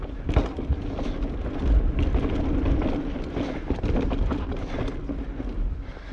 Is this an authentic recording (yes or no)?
yes